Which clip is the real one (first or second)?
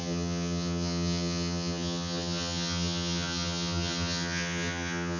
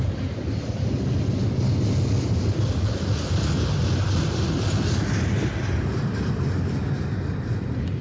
second